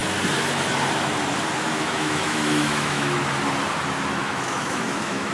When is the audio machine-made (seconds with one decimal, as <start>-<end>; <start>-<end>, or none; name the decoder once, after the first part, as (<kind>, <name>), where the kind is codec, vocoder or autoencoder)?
1.6-3.2 (autoencoder, DAC-VAE); 4.2-5.3